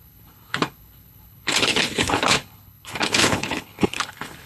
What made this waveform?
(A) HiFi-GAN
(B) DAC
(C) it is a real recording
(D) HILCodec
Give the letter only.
D